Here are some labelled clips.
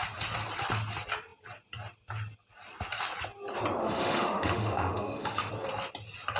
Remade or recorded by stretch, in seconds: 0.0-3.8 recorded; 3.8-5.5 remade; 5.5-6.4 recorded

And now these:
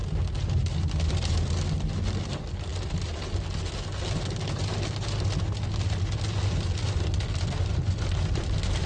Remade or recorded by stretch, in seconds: 0.0-0.7 recorded; 0.7-2.7 remade; 2.7-6.4 recorded; 6.4-8.9 remade